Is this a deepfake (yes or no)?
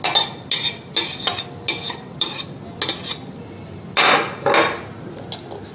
no